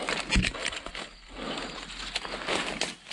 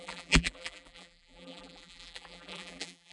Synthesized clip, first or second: second